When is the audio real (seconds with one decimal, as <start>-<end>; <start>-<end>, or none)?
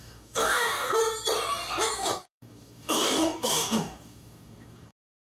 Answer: 1.0-1.7